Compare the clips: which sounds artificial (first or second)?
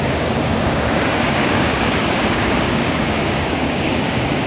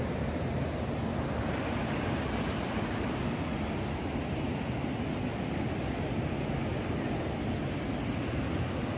first